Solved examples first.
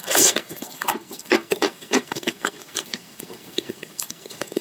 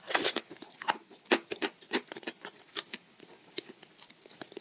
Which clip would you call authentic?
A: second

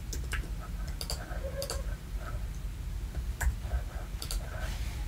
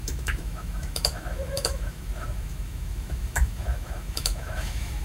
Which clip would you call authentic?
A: first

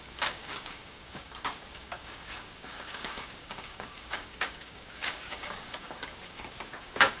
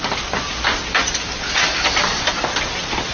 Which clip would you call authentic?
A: second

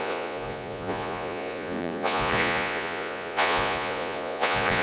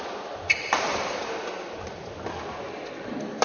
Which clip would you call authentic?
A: second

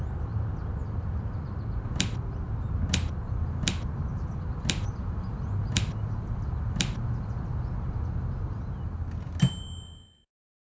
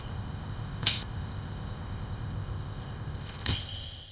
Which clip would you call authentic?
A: first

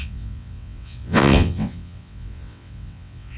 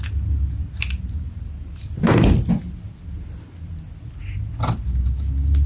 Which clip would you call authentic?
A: second